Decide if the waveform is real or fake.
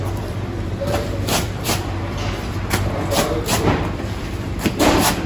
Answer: fake